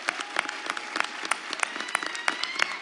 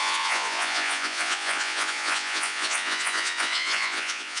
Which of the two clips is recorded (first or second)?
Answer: first